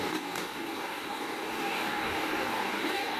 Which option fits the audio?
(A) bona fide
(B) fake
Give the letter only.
B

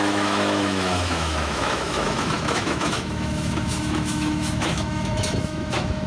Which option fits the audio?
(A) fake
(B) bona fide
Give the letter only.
A